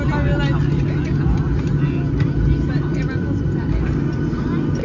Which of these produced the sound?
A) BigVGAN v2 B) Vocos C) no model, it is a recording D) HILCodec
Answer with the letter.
C